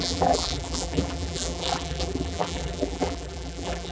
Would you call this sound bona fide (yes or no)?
no